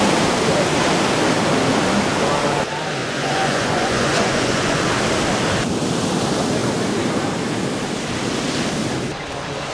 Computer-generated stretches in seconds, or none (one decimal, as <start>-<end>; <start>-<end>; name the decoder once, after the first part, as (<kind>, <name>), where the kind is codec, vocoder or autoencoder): 3.0-4.8 (vocoder, Vocos)